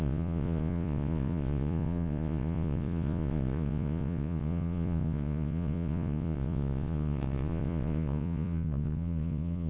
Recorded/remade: remade